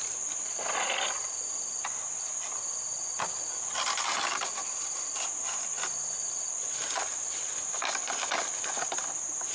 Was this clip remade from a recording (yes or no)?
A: no